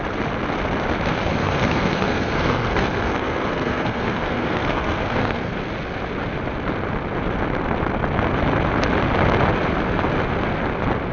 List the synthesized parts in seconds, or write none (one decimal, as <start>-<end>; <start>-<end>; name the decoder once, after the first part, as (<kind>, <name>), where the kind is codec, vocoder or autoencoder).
1.4-5.5 (codec, SNAC)